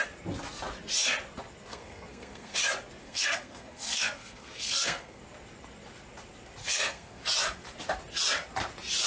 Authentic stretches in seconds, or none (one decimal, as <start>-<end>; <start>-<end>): 0.0-1.7; 2.6-3.0; 5.2-6.6; 7.2-9.1